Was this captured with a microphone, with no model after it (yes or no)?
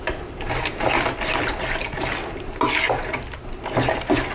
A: yes